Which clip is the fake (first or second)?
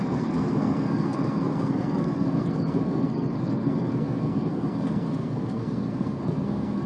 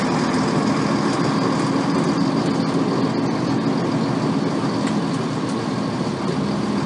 first